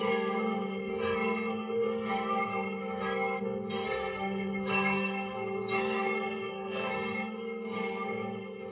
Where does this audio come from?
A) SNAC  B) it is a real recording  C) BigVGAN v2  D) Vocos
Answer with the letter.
A